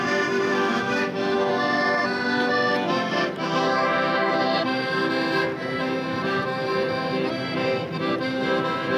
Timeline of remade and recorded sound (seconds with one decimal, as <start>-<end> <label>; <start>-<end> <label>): 0.0-0.5 recorded; 0.5-1.5 remade; 1.5-9.0 recorded